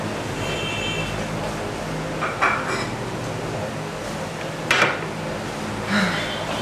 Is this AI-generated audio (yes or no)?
no